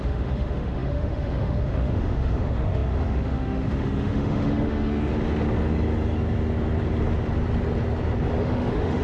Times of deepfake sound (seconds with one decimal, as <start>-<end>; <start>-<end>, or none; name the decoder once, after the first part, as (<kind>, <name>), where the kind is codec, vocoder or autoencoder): 0.0-5.1 (autoencoder, DAC-VAE); 8.4-9.0